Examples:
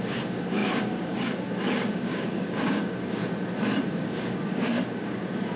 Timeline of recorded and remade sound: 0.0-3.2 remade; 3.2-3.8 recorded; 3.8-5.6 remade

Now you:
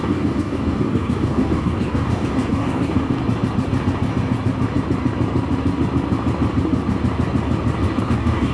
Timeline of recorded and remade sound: 0.0-3.2 remade; 3.2-8.0 recorded; 8.0-8.5 remade

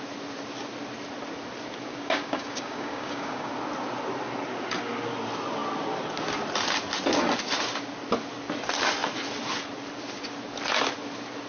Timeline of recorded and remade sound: 0.0-1.9 recorded; 1.9-3.5 remade; 3.5-11.5 recorded